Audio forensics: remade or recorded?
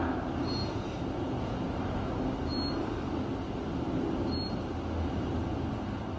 recorded